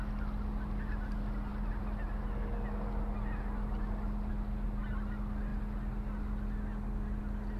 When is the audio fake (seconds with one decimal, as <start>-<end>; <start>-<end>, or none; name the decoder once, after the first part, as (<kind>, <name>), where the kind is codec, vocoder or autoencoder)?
none